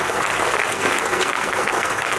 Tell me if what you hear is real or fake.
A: fake